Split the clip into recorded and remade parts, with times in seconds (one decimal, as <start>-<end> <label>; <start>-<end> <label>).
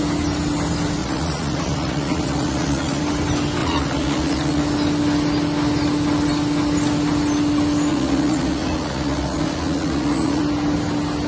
0.0-1.0 recorded; 1.0-3.0 remade; 3.0-3.6 recorded; 3.6-4.6 remade; 4.6-7.9 recorded; 7.9-10.4 remade; 10.4-11.3 recorded